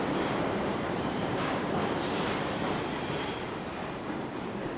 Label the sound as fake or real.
fake